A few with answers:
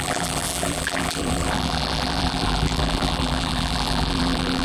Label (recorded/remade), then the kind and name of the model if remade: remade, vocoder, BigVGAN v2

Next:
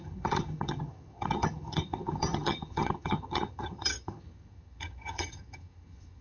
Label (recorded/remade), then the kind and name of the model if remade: remade, vocoder, HiFi-GAN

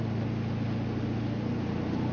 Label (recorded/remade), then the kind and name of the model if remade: recorded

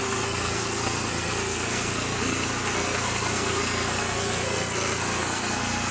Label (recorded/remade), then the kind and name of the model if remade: remade, codec, SNAC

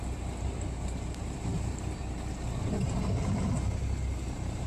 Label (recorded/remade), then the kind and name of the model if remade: recorded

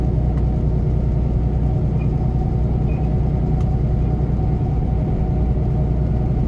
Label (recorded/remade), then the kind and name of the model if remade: recorded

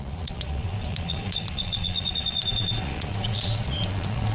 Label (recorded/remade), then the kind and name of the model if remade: remade, vocoder, Vocos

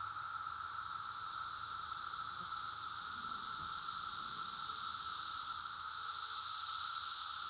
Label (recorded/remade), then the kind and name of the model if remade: recorded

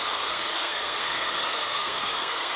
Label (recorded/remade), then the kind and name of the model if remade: remade, codec, SNAC